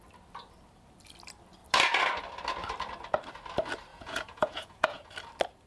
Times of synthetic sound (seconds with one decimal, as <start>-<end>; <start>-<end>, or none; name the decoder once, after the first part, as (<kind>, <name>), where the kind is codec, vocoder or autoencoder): 3.9-5.0 (vocoder, Vocos)